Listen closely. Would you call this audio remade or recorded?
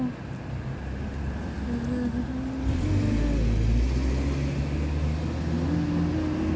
recorded